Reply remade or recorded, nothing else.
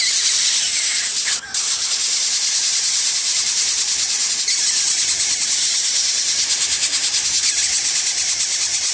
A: recorded